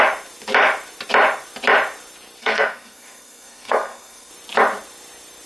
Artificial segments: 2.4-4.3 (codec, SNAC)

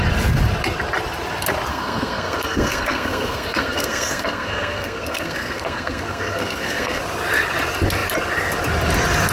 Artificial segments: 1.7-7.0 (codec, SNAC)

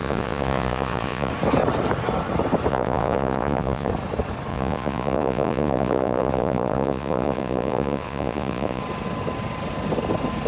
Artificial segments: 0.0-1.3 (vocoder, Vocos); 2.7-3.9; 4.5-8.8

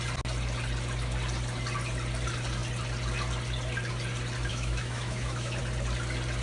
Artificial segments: 4.5-5.6 (autoencoder, DAC-VAE)

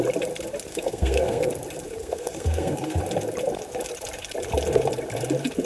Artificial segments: 0.7-1.5 (codec, SNAC); 2.0-3.0

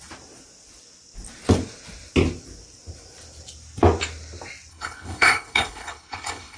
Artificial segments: 4.7-6.6 (codec, HILCodec)

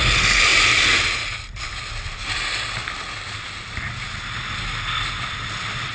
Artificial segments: none

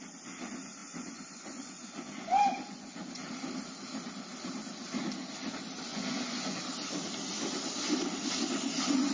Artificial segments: 0.8-3.3 (vocoder, Vocos); 5.9-6.6